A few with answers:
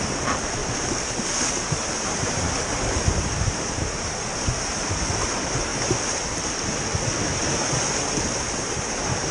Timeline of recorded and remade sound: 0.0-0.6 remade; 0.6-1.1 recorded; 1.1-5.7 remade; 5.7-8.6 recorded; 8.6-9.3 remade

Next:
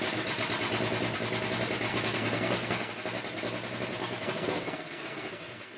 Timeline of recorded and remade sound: 0.0-1.9 recorded; 1.9-2.9 remade; 2.9-4.0 recorded; 4.0-5.8 remade

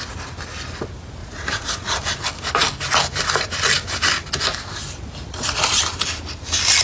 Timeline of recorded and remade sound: 0.0-1.2 recorded; 1.2-1.9 remade; 1.9-6.8 recorded

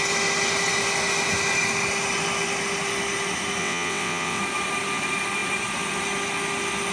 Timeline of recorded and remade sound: 0.0-3.6 recorded; 3.6-4.4 remade; 4.4-6.9 recorded

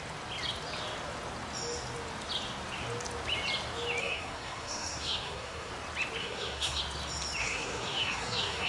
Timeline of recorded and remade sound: 0.0-4.0 recorded; 4.0-5.7 remade; 5.7-6.2 recorded; 6.2-6.8 remade; 6.8-7.4 recorded; 7.4-8.7 remade